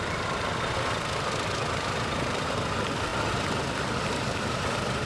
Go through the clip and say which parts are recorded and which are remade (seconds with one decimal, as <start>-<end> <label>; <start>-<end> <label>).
0.0-5.1 recorded